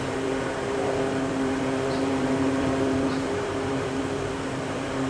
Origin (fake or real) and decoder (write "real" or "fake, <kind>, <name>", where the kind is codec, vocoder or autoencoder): fake, vocoder, BigVGAN v2